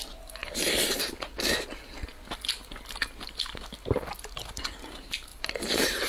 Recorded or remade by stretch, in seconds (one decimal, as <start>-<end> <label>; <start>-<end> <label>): 0.0-0.4 recorded; 0.4-1.0 remade; 1.0-5.3 recorded; 5.3-6.1 remade